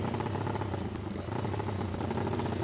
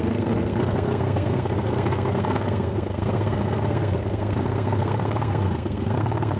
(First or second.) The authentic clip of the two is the first